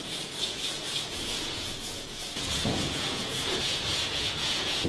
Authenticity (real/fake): fake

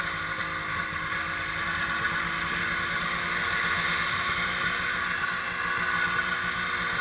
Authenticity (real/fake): real